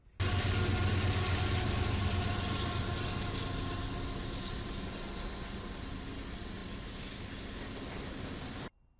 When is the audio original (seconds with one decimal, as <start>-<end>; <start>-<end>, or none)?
0.0-9.0